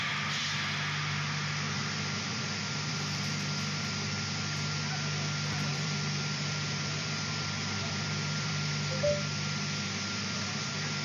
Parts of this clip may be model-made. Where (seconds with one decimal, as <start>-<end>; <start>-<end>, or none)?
5.7-8.7